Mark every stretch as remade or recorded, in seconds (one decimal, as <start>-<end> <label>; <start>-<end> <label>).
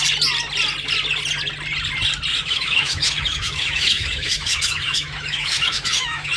0.0-2.3 recorded; 2.3-6.4 remade